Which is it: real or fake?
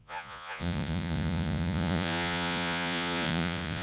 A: fake